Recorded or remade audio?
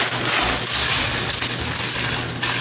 recorded